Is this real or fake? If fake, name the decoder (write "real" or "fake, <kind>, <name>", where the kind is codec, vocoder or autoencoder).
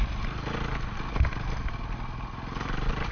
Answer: real